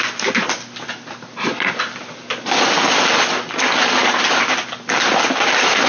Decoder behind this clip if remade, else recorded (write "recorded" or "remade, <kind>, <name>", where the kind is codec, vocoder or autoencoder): recorded